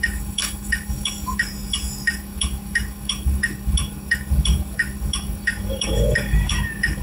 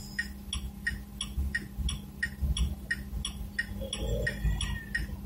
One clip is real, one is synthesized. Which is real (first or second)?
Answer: second